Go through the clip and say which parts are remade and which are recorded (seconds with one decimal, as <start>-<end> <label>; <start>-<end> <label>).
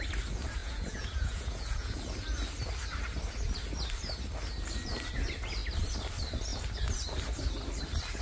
0.0-0.6 recorded; 0.6-2.0 remade; 2.0-8.2 recorded